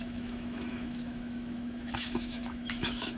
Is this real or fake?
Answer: fake